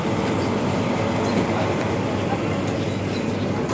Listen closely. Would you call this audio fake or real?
real